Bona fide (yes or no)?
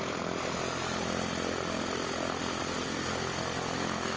yes